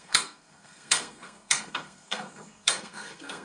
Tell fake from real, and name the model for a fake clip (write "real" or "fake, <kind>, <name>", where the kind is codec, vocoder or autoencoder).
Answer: fake, codec, SNAC